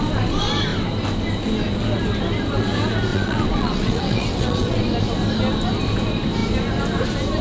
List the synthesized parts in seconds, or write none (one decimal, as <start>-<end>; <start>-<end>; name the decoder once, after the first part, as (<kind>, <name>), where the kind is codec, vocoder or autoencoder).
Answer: 3.1-4.8 (vocoder, WaveNeXt)